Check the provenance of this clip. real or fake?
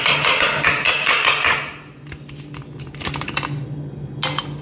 real